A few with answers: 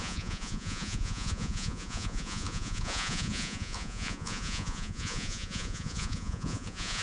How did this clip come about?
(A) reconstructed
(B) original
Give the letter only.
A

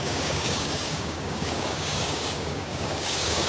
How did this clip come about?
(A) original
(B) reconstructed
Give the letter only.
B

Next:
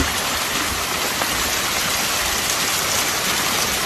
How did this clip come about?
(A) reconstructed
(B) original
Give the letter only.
B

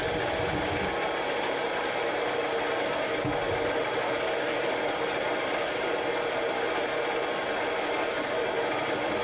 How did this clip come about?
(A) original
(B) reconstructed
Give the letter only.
A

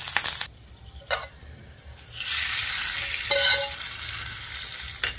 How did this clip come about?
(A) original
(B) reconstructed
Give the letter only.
A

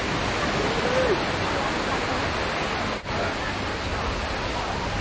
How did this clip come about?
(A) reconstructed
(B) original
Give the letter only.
B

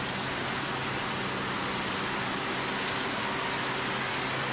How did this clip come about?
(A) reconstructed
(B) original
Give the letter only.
B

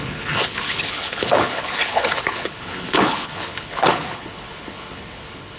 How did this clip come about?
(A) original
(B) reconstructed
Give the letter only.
B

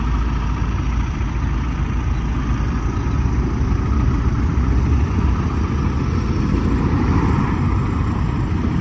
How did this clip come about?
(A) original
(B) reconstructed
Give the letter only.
A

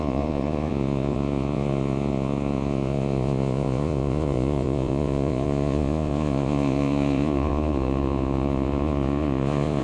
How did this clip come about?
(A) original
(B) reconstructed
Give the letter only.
B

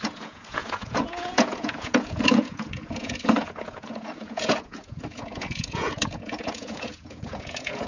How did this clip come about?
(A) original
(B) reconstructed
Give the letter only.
B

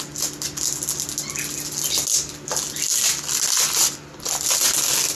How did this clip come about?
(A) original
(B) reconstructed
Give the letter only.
A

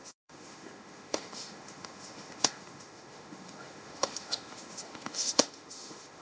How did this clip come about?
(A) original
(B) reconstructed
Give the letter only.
B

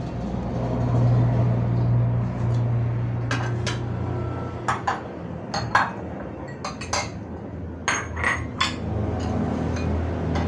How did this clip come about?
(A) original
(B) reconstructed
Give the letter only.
A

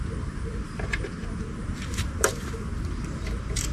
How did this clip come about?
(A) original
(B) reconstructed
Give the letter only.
B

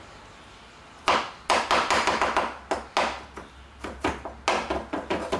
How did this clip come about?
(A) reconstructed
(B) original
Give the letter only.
B